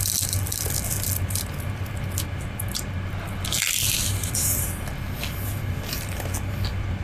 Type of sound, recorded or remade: recorded